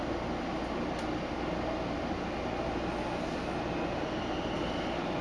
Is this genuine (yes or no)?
yes